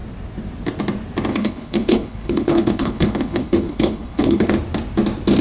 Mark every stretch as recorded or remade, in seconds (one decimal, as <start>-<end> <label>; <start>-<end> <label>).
0.0-1.3 recorded; 1.3-4.5 remade; 4.5-5.4 recorded